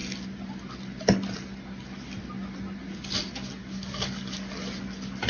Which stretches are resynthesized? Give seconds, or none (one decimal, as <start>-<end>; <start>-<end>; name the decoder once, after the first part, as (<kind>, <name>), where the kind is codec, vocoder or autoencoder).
3.6-4.5 (codec, DAC)

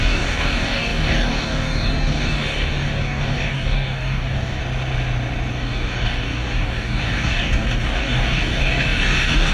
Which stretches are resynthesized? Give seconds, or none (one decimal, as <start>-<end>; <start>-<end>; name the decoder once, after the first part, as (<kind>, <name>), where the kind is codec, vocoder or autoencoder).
0.0-4.6 (codec, DAC); 5.5-9.5

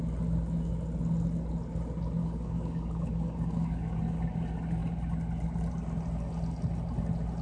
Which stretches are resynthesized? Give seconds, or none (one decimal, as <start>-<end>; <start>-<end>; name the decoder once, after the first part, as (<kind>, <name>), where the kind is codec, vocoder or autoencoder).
2.2-4.0 (codec, DAC)

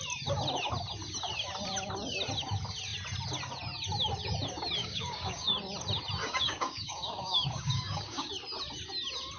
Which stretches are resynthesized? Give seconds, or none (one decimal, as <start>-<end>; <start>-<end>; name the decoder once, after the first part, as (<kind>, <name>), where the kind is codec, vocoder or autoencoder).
4.8-5.5 (codec, DAC); 6.2-8.3

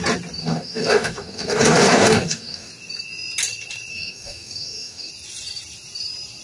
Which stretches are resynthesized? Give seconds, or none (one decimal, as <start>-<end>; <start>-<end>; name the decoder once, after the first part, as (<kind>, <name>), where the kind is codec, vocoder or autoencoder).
0.4-2.7 (codec, DAC); 3.9-5.1